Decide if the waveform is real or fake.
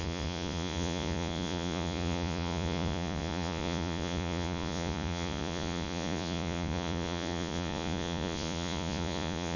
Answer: fake